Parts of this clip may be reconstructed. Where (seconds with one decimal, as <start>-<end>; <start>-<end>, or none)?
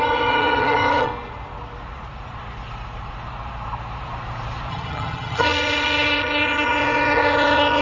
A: 0.0-1.1; 4.7-7.8